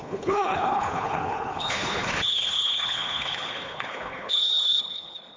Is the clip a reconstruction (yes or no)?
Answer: yes